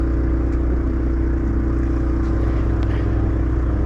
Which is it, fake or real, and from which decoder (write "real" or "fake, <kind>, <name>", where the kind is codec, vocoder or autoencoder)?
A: real